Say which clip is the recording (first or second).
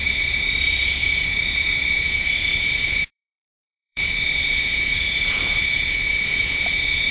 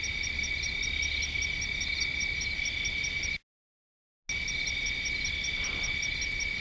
second